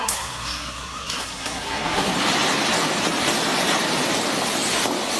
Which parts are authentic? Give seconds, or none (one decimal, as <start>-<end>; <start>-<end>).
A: 2.1-5.2